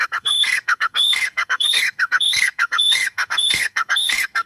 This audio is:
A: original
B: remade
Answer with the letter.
B